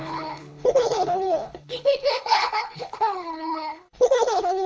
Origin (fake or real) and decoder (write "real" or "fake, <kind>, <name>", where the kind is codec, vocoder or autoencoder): fake, codec, HILCodec